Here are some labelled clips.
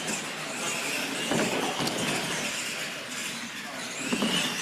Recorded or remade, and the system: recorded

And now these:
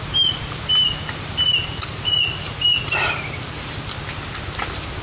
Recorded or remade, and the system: recorded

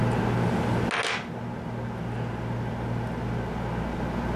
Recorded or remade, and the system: recorded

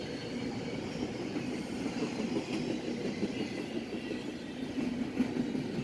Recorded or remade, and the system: recorded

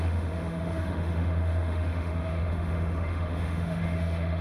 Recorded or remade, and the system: remade, autoencoder, DAC-VAE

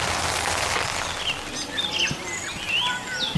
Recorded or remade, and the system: recorded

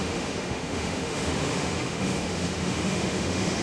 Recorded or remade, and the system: remade, autoencoder, DAC-VAE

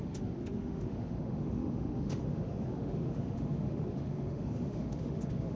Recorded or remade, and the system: remade, autoencoder, DAC-VAE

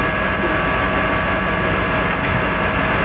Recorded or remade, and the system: recorded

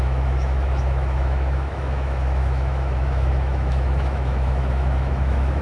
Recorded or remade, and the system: remade, autoencoder, DAC-VAE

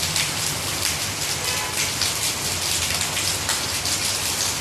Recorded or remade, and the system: recorded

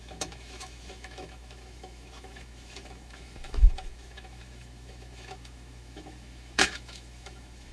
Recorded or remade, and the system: remade, autoencoder, DAC-VAE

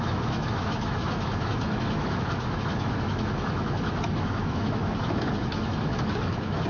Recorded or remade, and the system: remade, autoencoder, DAC-VAE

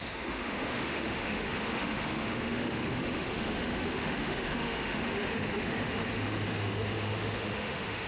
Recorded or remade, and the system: remade, autoencoder, DAC-VAE